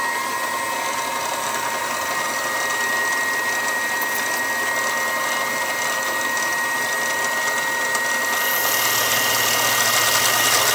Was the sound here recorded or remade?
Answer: recorded